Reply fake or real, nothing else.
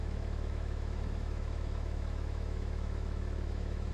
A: fake